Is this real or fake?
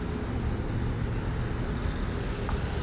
real